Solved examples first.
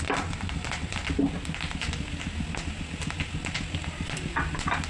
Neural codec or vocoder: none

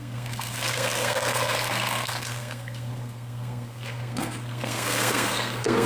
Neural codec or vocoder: codec, SNAC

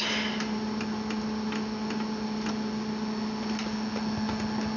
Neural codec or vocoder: none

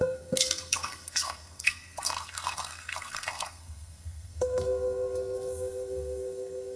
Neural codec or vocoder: codec, SNAC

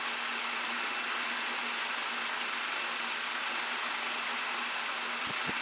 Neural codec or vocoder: none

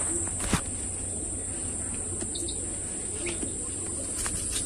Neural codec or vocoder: none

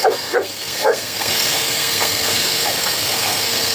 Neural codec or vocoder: codec, SNAC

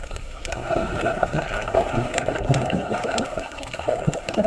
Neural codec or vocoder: codec, SNAC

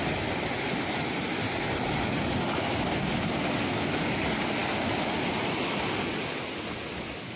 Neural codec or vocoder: none